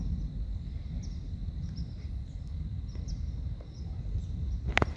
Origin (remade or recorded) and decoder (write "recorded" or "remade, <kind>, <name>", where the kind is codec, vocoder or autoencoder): recorded